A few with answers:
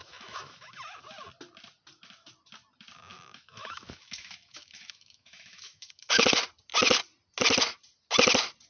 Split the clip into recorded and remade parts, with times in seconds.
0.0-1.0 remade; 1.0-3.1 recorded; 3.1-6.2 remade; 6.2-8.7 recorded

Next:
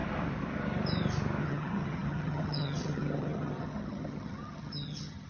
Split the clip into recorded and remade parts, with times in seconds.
0.0-1.4 recorded; 1.4-5.3 remade

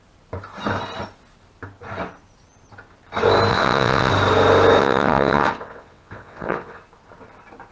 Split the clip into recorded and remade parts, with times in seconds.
0.0-3.5 recorded; 3.5-4.1 remade; 4.1-4.8 recorded; 4.8-6.8 remade; 6.8-7.7 recorded

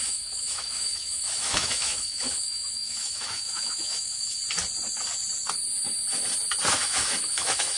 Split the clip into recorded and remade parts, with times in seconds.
0.0-4.4 remade; 4.4-6.7 recorded; 6.7-7.8 remade